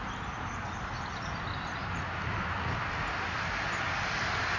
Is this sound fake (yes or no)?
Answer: no